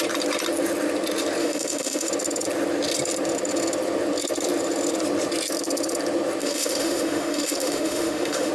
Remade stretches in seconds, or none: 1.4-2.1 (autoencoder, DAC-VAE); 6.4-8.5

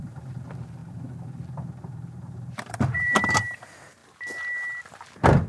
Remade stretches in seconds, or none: 0.0-4.0 (vocoder, BigVGAN v2)

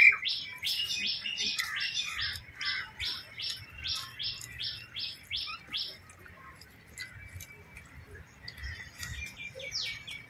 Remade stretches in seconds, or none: none

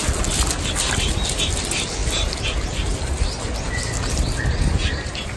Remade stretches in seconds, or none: none